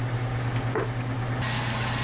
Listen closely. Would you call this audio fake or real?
real